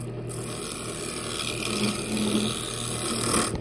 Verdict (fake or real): real